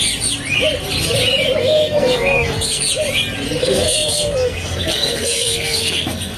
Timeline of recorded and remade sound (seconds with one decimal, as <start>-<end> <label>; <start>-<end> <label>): 0.0-1.6 recorded; 1.6-2.8 remade; 2.8-3.6 recorded; 3.6-6.4 remade